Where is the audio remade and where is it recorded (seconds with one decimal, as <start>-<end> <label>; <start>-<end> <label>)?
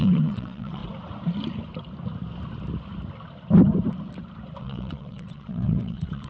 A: 0.0-0.8 remade; 0.8-4.6 recorded; 4.6-6.3 remade